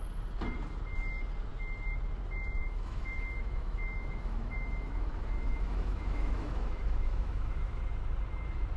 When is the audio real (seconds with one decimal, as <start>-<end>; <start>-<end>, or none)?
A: 0.0-2.6; 7.8-8.8